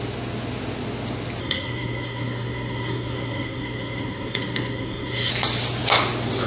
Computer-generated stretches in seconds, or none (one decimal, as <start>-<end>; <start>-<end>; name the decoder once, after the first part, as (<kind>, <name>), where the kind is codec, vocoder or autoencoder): 1.4-5.3 (codec, SNAC)